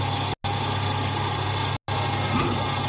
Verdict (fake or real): real